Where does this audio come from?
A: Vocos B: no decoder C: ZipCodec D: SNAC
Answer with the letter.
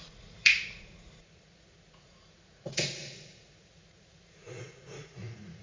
A